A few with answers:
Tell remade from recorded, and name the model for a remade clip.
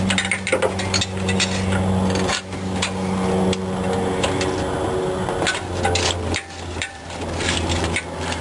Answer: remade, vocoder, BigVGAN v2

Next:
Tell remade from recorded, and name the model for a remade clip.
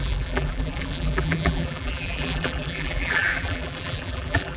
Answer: remade, vocoder, BigVGAN v2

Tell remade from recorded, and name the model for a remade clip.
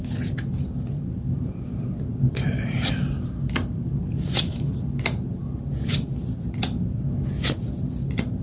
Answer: remade, vocoder, BigVGAN v2